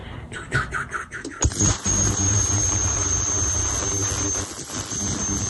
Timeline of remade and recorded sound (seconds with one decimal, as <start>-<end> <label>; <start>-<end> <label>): 0.0-3.3 remade; 3.3-5.5 recorded